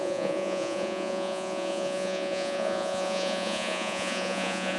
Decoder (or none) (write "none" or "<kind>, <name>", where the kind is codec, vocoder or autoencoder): vocoder, Vocos